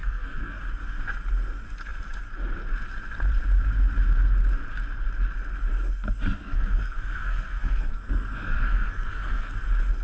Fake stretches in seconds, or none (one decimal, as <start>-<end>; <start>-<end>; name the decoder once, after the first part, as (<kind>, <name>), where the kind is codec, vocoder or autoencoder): 0.0-0.6 (codec, SNAC); 6.4-9.5